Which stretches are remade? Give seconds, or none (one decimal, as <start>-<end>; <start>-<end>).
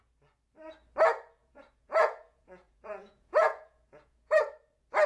1.4-4.5